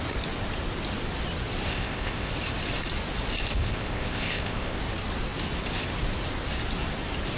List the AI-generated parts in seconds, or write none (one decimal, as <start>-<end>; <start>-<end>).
1.7-2.3; 3.6-4.8